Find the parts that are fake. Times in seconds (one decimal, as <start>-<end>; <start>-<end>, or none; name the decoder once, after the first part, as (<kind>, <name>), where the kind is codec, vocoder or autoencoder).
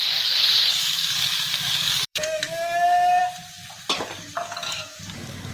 0.0-3.2 (codec, DAC); 3.9-5.5